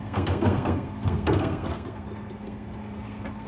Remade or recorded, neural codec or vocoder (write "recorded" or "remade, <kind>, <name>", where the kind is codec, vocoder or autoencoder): remade, codec, SNAC